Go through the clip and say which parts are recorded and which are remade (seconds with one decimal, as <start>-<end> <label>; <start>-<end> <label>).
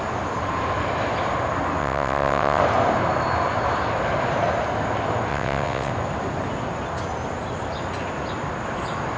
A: 0.0-1.8 recorded; 1.8-2.6 remade; 2.6-5.3 recorded; 5.3-5.9 remade; 5.9-9.2 recorded